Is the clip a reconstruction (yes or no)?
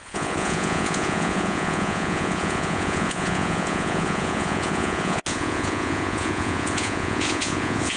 yes